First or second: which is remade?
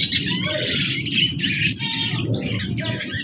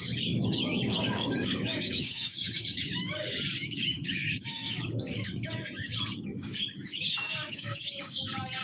second